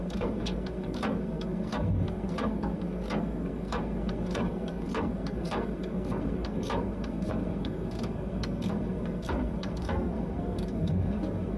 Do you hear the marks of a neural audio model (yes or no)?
yes